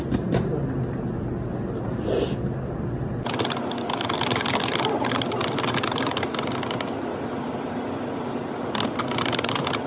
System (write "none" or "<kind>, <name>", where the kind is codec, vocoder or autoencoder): none